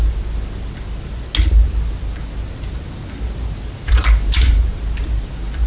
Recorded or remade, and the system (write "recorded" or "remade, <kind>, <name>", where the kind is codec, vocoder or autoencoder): recorded